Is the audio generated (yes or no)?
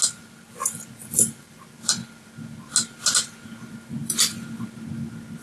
no